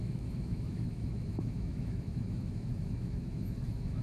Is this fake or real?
fake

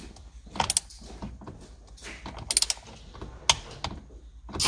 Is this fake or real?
real